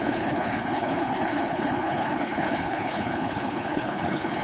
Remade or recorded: remade